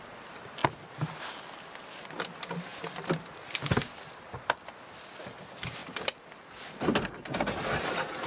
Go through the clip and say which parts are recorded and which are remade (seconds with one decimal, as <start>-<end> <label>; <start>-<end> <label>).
0.0-8.3 recorded